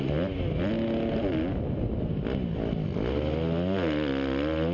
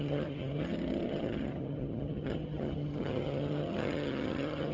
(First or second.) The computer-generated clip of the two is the second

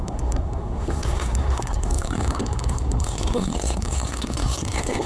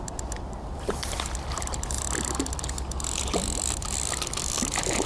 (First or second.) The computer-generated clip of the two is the first